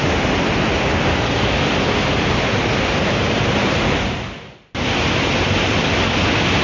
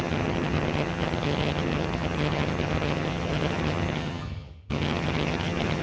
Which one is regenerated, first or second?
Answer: second